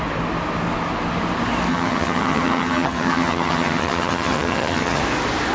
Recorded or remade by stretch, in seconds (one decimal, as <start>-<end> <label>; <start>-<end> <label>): 0.0-1.7 recorded; 1.7-5.0 remade; 5.0-5.5 recorded